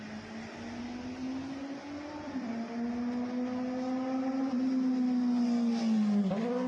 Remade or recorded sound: recorded